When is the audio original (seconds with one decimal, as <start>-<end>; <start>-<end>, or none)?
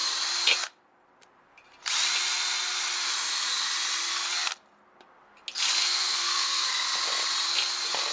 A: 0.0-5.8; 6.7-8.1